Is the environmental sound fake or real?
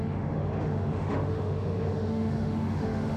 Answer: fake